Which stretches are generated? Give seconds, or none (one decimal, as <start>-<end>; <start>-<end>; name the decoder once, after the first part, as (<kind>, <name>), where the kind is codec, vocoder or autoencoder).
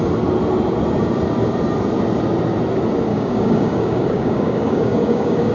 3.1-5.5 (codec, DAC)